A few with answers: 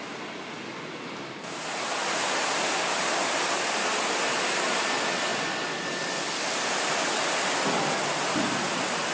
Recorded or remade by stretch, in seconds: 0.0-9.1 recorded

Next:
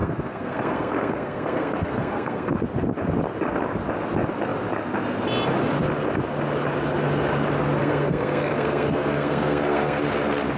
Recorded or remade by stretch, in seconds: 0.0-2.5 remade; 2.5-7.8 recorded; 7.8-10.0 remade; 10.0-10.6 recorded

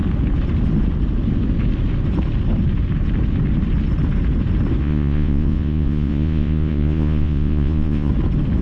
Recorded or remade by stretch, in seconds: 0.0-4.8 recorded; 4.8-8.1 remade; 8.1-8.6 recorded

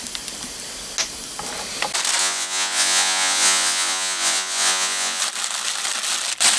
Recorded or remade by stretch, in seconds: 0.0-2.2 recorded; 2.2-5.2 remade; 5.2-6.6 recorded

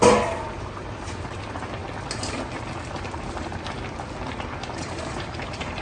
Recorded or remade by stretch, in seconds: 0.0-1.8 remade; 1.8-3.0 recorded; 3.0-3.5 remade; 3.5-4.8 recorded; 4.8-5.8 remade

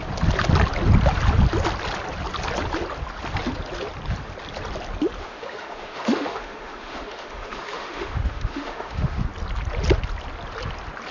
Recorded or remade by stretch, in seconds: 0.0-5.2 recorded; 5.2-9.2 remade; 9.2-11.1 recorded